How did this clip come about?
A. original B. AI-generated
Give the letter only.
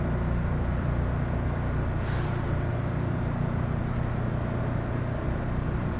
A